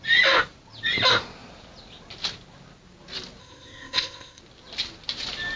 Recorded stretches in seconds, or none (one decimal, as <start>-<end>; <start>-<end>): 0.0-3.4; 4.4-5.6